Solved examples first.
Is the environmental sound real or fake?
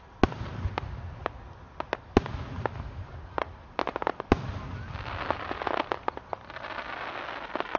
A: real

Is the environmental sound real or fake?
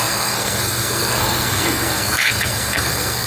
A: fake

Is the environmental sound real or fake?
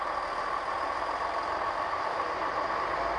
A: real